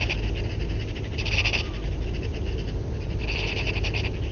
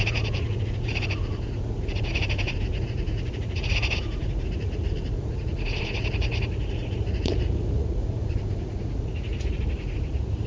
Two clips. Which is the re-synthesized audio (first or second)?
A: second